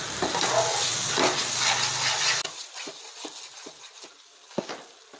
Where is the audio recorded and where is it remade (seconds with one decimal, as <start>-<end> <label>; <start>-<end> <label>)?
0.0-5.2 recorded